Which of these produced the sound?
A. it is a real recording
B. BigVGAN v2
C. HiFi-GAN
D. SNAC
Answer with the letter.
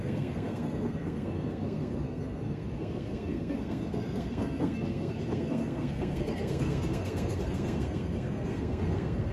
D